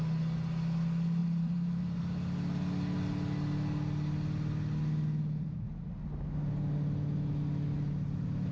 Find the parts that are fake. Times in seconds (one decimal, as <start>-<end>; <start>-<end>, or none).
1.2-2.0